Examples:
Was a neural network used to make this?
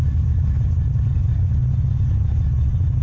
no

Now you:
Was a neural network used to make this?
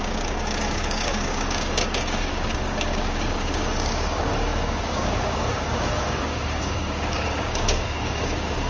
yes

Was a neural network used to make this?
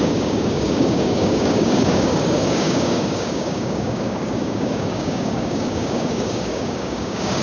yes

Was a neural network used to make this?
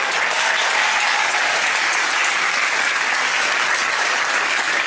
yes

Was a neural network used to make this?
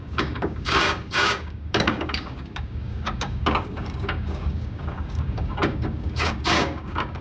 yes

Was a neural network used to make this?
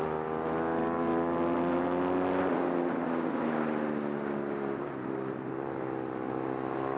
no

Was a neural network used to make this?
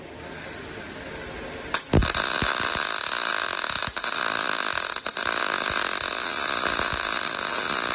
no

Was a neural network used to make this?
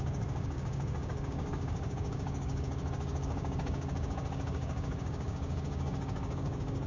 yes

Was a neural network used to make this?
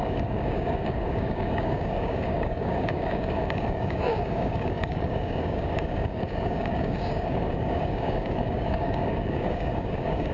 yes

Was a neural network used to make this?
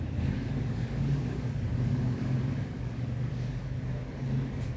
yes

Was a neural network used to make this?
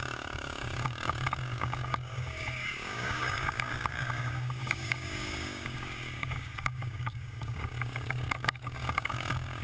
yes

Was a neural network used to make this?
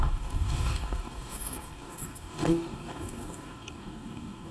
yes